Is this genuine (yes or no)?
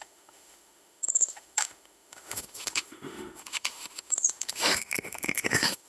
no